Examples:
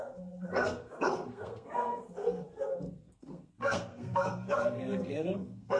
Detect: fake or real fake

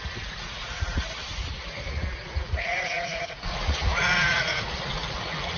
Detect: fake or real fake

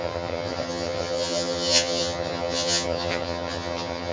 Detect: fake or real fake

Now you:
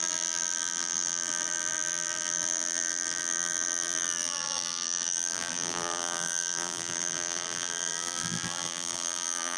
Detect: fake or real fake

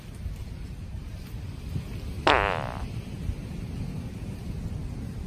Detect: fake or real real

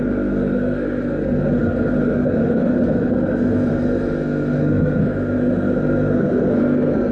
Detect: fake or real fake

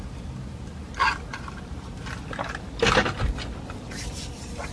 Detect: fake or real real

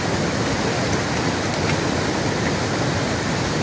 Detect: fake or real real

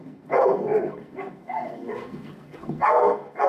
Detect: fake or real fake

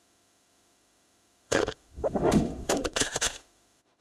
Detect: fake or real fake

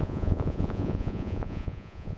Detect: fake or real fake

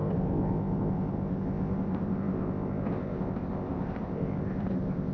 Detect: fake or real fake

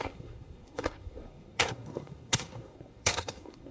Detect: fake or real fake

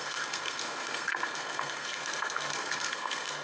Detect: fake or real fake